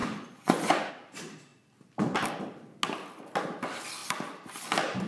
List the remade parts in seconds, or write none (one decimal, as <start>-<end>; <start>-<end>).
0.0-0.9